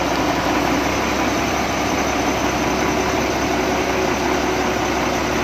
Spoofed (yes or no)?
no